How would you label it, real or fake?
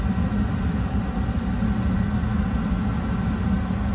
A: real